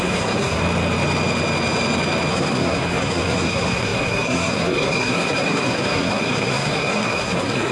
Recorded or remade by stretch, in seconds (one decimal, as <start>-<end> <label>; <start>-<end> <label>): 0.0-0.6 remade; 0.6-2.3 recorded; 2.3-7.7 remade